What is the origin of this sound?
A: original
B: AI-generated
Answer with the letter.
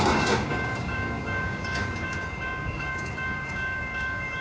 B